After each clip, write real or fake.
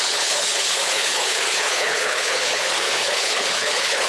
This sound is fake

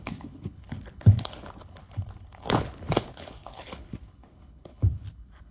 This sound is fake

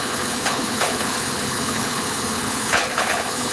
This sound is fake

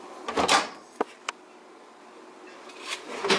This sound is real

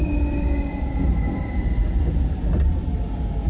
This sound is real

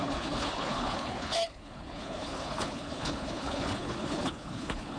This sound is fake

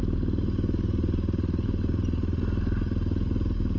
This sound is real